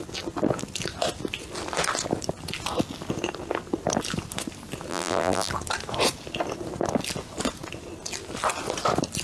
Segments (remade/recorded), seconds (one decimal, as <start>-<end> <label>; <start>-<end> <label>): 0.0-4.9 recorded; 4.9-5.5 remade; 5.5-9.2 recorded